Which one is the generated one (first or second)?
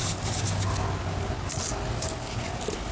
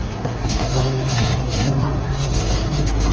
second